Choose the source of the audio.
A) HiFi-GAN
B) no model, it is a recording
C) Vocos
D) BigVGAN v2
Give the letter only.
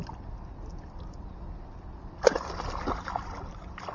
B